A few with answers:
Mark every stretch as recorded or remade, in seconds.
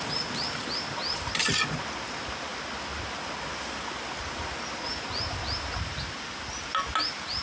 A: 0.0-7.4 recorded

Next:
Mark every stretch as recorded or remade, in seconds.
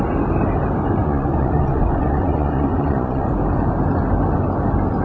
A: 0.0-1.0 recorded; 1.0-3.4 remade; 3.4-5.0 recorded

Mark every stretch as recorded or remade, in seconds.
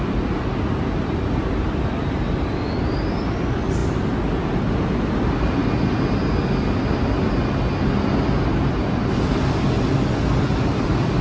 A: 0.0-11.2 recorded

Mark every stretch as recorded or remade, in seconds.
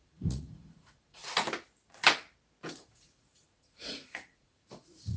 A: 0.0-1.2 remade; 1.2-2.7 recorded; 2.7-5.2 remade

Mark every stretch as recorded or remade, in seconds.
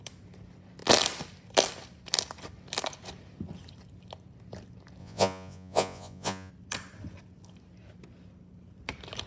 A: 0.0-5.0 recorded; 5.0-6.5 remade; 6.5-9.3 recorded